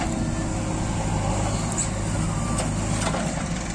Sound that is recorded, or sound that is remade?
recorded